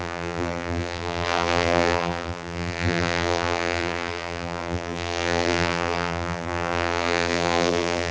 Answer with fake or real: fake